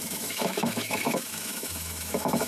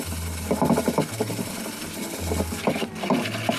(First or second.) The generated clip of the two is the first